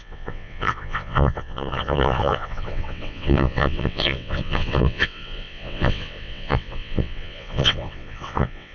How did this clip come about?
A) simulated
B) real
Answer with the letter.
A